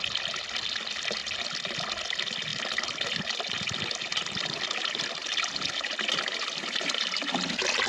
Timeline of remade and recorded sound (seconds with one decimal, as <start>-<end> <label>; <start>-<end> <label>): 0.0-7.9 recorded